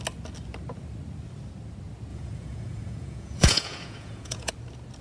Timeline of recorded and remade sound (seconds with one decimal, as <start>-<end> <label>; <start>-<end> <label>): 0.0-2.1 recorded; 2.1-4.5 remade; 4.5-5.0 recorded